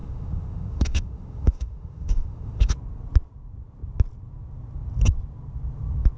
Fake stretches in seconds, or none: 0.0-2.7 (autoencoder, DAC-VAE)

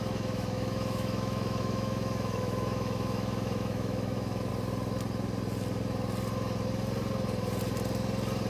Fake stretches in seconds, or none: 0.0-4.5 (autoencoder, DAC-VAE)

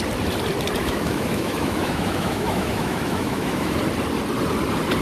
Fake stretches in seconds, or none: 0.8-3.8 (autoencoder, DAC-VAE)

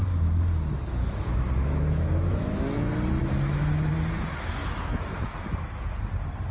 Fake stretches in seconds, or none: 1.0-2.6 (autoencoder, DAC-VAE); 3.2-3.9; 4.6-5.4